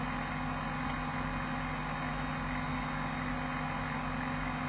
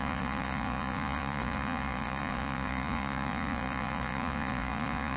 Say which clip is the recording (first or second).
first